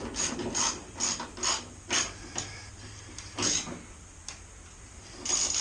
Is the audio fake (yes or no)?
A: no